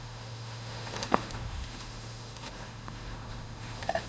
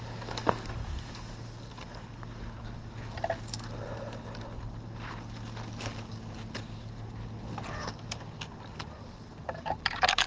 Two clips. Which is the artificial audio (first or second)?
first